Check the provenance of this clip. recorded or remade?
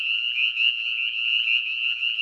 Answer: remade